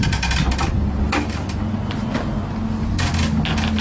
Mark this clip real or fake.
real